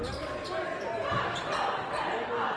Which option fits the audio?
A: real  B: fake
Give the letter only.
A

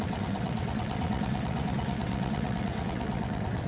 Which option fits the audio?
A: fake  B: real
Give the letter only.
A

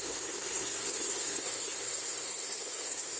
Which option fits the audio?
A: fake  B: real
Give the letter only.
A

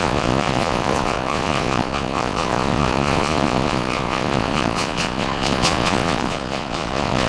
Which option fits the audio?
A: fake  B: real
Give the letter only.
A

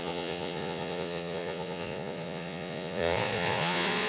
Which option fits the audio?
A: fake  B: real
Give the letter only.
A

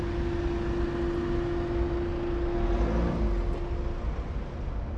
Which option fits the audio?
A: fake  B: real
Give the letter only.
B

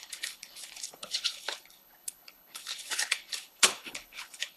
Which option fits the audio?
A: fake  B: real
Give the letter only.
A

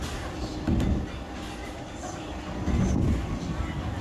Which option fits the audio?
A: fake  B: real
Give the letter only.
B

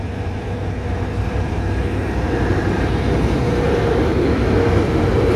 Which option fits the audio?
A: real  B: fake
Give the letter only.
A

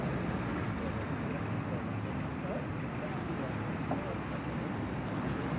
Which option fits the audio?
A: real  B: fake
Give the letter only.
A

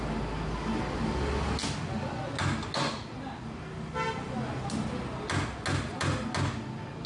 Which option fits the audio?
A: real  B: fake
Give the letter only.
A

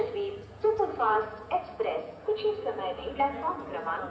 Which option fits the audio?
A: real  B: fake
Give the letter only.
B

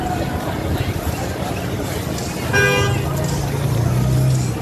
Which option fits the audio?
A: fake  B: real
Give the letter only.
B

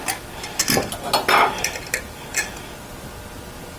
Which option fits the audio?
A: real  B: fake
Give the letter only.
A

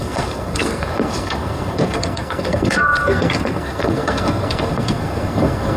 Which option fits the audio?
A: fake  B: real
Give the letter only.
A